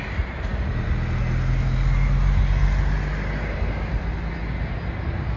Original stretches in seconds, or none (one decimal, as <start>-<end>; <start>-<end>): 0.0-5.4